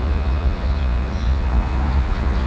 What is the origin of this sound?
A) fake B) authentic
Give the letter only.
A